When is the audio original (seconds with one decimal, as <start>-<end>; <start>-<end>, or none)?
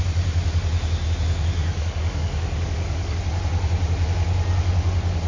0.0-1.6; 3.2-5.3